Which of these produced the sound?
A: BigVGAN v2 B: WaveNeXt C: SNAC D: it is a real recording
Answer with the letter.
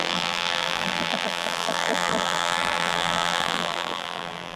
A